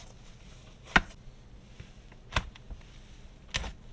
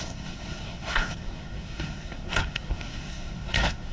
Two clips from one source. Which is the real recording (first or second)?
first